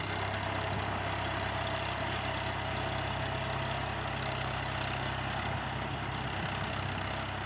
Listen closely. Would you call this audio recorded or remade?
recorded